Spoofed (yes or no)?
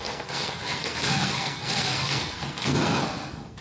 yes